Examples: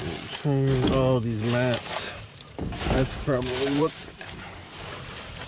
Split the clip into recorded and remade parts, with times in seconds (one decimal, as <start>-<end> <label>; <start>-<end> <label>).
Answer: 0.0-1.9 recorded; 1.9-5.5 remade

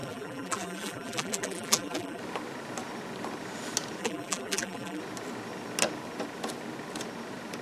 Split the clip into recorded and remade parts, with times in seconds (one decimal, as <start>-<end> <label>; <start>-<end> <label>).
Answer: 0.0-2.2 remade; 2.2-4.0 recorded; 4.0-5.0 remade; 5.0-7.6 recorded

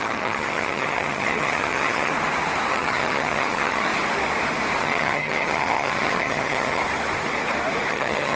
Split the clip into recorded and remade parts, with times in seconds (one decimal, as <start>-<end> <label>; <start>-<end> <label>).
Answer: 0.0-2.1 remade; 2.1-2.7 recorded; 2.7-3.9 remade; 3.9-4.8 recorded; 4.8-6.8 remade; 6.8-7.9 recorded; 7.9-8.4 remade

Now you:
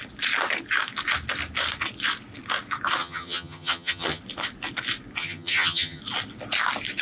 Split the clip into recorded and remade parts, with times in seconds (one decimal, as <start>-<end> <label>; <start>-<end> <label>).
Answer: 0.0-3.0 recorded; 3.0-4.2 remade; 4.2-5.2 recorded; 5.2-6.0 remade; 6.0-7.0 recorded